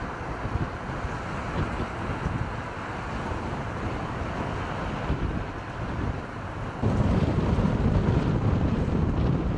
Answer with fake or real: real